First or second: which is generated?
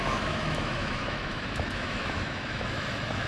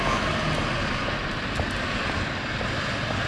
first